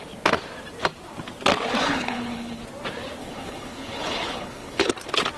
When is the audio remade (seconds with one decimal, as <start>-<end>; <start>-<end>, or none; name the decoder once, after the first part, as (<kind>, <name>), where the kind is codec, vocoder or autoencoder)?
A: 1.8-2.6 (codec, HILCodec); 3.2-4.9